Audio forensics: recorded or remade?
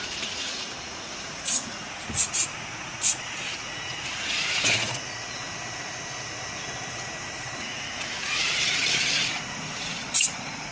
remade